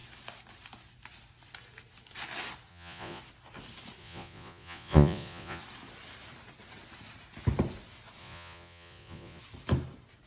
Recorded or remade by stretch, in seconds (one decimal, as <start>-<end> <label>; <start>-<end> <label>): 0.0-2.7 recorded; 2.7-3.2 remade; 3.2-4.0 recorded; 4.0-5.6 remade; 5.6-8.2 recorded; 8.2-9.4 remade; 9.4-10.3 recorded